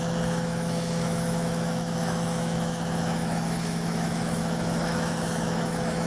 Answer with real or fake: fake